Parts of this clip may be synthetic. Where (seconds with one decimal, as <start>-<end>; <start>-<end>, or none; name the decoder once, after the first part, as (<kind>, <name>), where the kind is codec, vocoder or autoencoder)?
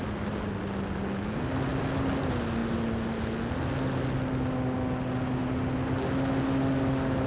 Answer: none